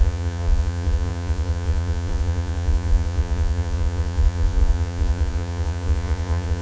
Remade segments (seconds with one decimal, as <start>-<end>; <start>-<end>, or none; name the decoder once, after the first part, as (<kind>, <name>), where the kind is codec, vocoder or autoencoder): 0.0-6.6 (vocoder, Vocos)